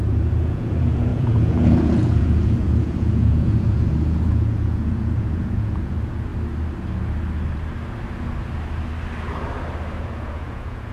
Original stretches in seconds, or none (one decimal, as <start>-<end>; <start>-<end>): 6.3-10.0